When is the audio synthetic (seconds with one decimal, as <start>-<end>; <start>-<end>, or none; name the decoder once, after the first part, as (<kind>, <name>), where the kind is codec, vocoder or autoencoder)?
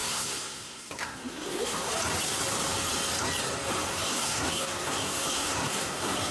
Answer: 0.0-1.9 (codec, SNAC); 3.9-6.3